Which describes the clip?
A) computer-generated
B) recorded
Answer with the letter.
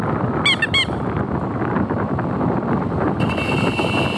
B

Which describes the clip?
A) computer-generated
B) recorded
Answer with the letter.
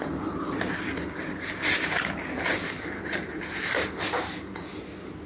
B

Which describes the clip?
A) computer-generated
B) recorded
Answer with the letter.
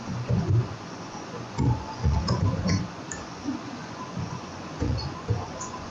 A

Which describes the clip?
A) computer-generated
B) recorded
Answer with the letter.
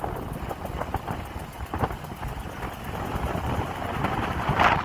B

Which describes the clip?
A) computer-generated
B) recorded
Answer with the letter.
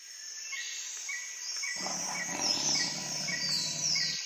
B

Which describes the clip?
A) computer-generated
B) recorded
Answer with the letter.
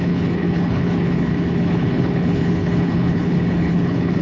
A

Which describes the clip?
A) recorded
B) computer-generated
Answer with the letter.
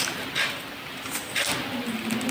A